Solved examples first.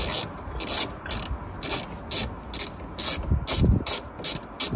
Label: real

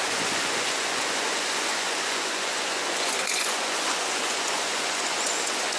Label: fake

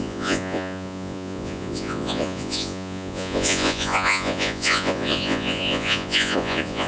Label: fake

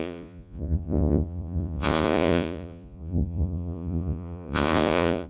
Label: fake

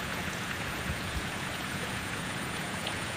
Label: fake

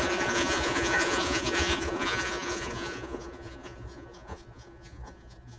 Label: fake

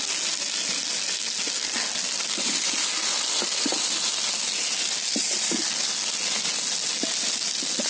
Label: real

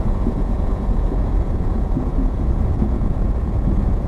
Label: fake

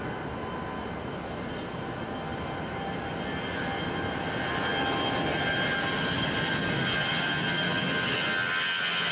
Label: real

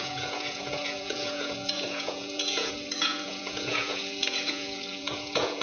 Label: fake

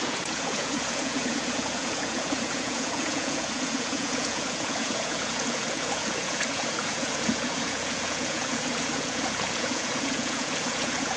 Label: fake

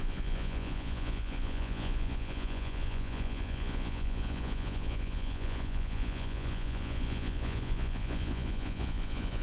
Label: fake